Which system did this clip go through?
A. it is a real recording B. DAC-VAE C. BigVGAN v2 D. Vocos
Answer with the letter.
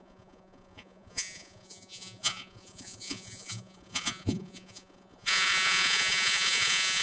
D